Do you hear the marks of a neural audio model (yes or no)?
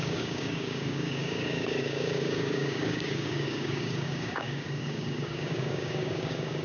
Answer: yes